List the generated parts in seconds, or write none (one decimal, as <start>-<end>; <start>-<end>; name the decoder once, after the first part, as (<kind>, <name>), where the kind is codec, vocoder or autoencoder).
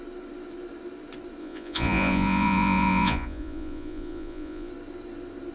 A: 1.4-4.7 (vocoder, Vocos)